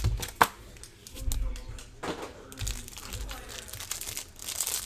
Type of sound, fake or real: real